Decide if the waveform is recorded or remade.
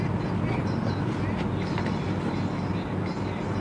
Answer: recorded